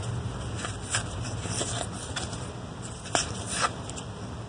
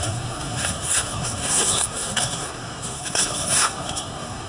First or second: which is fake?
second